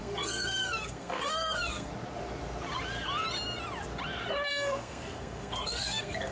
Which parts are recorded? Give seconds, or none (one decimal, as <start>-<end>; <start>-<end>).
1.9-4.5